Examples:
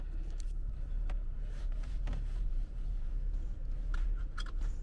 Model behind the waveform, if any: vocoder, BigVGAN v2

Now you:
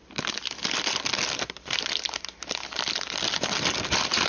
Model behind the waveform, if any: vocoder, BigVGAN v2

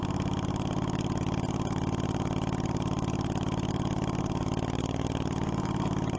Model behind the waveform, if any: none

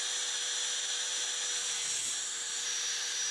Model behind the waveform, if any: none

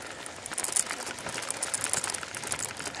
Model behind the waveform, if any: none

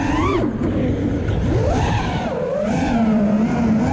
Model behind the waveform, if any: vocoder, BigVGAN v2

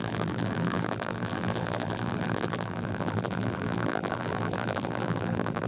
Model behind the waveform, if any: vocoder, BigVGAN v2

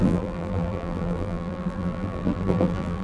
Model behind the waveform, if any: vocoder, BigVGAN v2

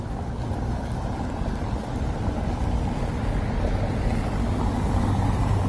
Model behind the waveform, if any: none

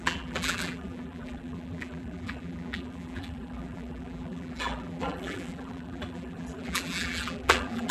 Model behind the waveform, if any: vocoder, BigVGAN v2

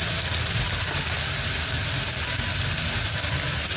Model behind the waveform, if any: none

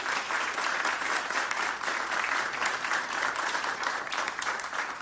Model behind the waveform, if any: vocoder, BigVGAN v2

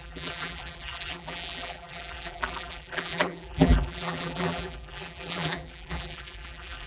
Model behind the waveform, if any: vocoder, BigVGAN v2